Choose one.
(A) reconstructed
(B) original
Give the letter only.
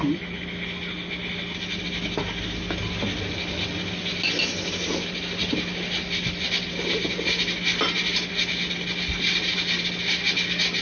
B